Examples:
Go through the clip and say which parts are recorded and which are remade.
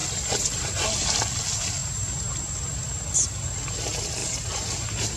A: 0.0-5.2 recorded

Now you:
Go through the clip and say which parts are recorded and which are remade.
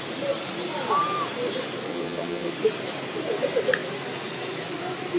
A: 0.0-1.9 recorded; 1.9-2.5 remade; 2.5-5.2 recorded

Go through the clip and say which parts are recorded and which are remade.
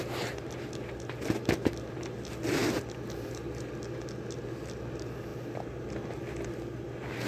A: 0.0-7.3 recorded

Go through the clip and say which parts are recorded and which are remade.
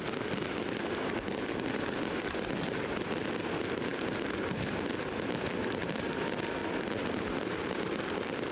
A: 0.0-8.5 recorded